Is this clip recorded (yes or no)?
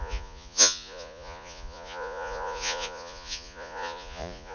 no